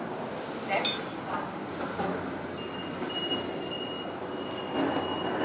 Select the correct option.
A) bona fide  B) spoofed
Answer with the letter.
A